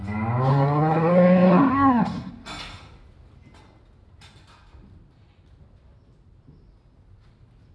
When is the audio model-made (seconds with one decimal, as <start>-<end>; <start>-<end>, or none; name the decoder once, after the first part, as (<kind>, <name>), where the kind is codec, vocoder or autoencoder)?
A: 0.5-2.3 (codec, SNAC)